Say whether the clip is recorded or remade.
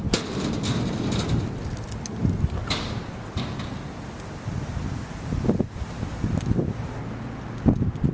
recorded